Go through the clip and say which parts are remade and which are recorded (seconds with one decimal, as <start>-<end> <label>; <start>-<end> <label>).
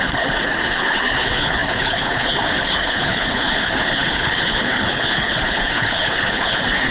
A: 0.0-6.9 remade